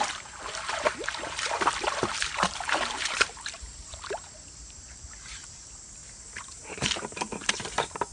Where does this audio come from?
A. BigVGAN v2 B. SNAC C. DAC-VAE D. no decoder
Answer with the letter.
A